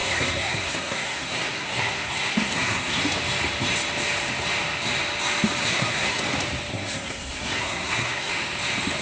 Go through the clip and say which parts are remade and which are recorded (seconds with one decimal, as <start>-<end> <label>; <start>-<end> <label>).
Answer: 0.0-3.0 remade; 3.0-5.6 recorded; 5.6-6.2 remade; 6.2-6.7 recorded; 6.7-8.3 remade; 8.3-9.0 recorded